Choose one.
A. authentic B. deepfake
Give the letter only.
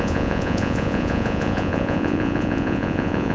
B